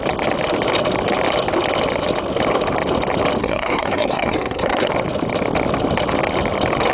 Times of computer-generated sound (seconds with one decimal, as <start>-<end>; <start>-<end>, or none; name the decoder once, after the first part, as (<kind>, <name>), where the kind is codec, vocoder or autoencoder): 3.4-4.9 (codec, SNAC)